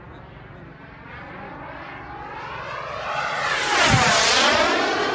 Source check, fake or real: real